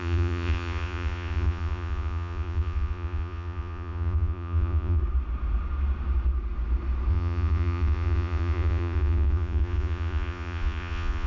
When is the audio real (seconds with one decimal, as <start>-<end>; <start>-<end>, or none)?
5.0-7.1